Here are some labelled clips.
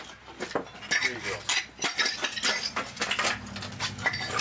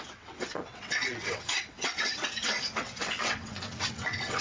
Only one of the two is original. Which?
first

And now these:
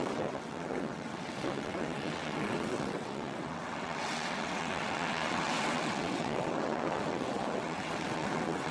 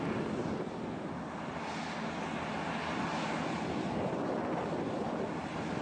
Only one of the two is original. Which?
second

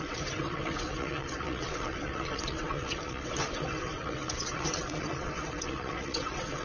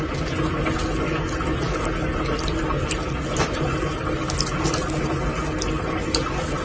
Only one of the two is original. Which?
second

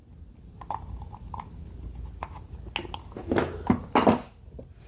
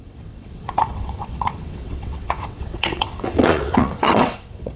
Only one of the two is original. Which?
first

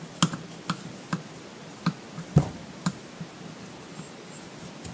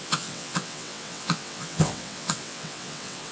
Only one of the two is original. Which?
first